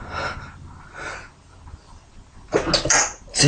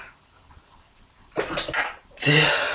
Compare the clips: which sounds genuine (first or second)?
first